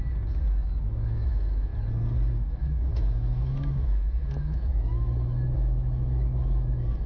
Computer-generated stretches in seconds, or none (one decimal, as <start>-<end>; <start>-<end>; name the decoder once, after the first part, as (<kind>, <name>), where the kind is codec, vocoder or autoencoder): 0.8-1.7 (autoencoder, DAC-VAE); 2.3-7.1

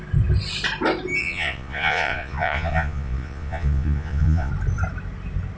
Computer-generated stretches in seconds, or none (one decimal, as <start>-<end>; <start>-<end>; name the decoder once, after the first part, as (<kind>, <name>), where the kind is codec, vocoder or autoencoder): 1.2-4.5 (vocoder, Vocos)